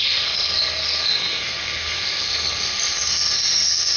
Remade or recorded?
remade